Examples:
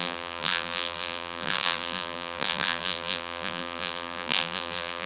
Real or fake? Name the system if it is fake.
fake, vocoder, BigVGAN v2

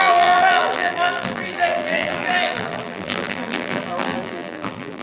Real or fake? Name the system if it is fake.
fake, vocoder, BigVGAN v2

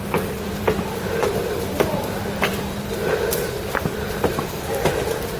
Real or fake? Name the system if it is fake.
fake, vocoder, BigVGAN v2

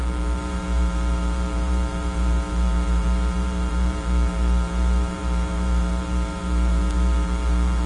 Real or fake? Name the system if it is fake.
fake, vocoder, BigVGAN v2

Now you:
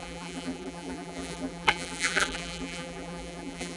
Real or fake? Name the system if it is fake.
fake, vocoder, BigVGAN v2